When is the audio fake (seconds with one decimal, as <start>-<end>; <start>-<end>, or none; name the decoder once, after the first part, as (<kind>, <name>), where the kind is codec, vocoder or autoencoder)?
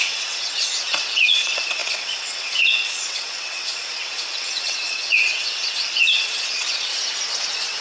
0.0-6.9 (vocoder, WaveNeXt)